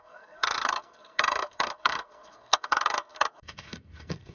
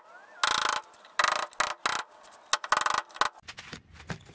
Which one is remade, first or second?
first